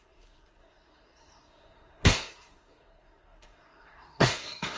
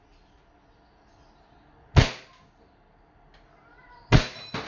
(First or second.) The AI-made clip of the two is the first